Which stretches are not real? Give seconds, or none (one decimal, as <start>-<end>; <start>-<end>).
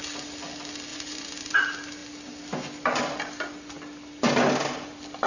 0.9-1.6